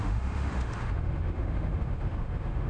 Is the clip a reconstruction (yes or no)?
yes